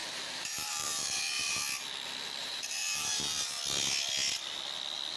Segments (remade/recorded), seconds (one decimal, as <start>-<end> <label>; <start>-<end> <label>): 0.0-1.6 remade; 1.6-2.4 recorded; 2.4-3.6 remade; 3.6-5.2 recorded